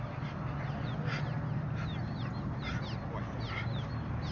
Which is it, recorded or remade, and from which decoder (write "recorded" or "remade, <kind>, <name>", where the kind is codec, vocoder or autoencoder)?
recorded